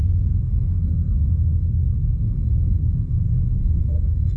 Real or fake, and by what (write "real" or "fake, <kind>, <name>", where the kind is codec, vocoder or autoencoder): fake, codec, SNAC